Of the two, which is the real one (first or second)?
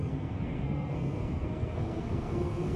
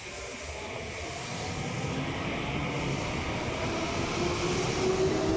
second